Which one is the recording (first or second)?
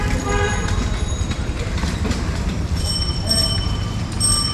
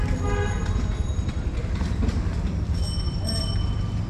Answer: second